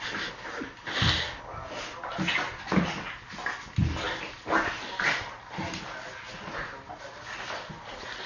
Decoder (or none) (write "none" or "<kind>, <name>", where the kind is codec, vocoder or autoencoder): none